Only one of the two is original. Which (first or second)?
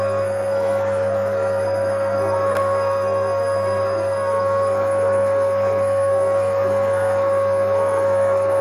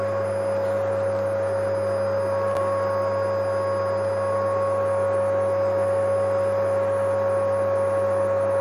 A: second